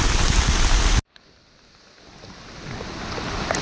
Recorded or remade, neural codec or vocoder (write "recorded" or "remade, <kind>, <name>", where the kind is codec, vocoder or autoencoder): recorded